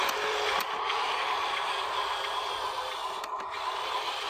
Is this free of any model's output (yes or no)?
yes